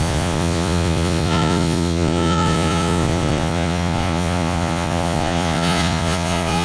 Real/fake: fake